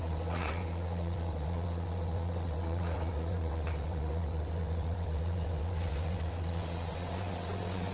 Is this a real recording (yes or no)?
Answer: no